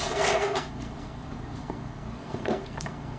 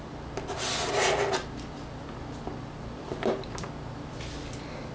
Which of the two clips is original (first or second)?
second